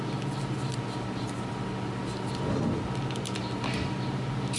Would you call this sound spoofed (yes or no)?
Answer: no